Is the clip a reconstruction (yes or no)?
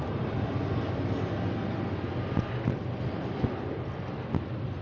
no